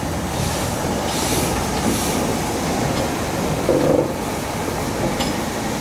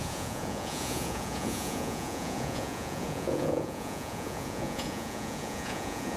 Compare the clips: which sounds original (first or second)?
first